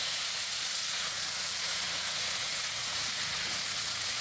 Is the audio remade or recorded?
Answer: remade